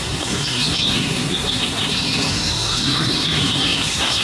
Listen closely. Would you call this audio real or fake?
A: fake